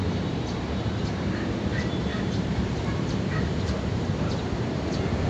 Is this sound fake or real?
fake